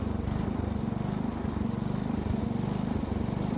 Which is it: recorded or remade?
recorded